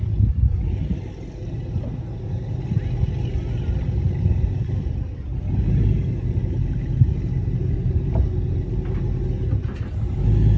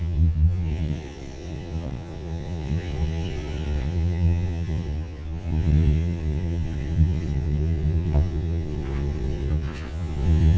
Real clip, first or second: first